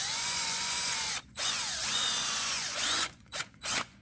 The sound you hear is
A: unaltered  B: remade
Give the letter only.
B